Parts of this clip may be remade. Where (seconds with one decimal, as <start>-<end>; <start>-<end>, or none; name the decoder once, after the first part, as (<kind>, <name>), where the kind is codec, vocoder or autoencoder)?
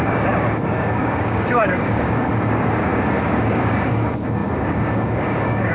0.0-5.7 (codec, DAC)